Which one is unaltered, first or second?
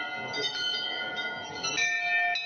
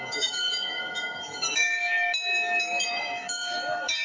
first